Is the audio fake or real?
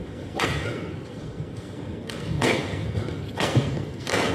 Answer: fake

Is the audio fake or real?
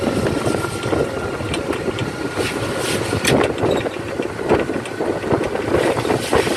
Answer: real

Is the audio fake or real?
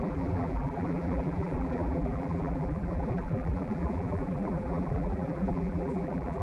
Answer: fake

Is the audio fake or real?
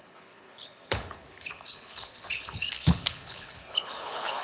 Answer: fake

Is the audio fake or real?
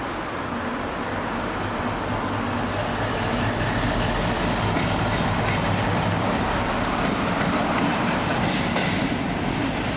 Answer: fake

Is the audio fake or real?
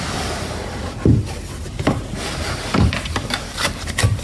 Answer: fake